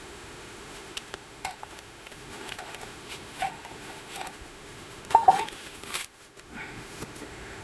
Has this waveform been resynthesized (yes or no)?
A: yes